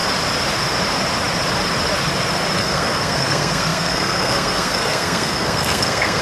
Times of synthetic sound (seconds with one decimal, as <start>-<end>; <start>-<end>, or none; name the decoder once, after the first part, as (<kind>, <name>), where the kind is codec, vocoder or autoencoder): 2.6-6.2 (codec, SNAC)